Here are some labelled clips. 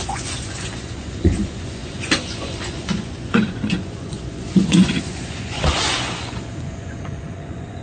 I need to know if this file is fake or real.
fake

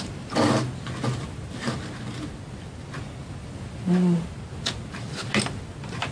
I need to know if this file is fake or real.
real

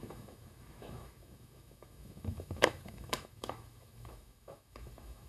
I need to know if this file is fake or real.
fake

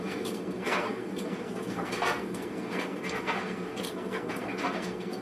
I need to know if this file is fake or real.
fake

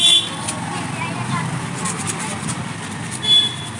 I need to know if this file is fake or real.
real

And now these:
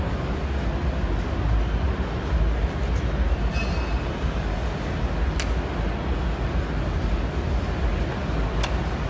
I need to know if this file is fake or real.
real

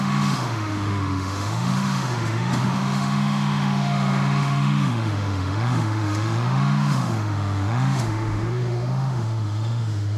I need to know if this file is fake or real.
fake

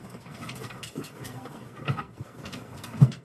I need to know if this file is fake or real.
fake